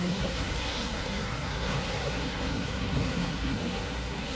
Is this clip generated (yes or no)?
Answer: yes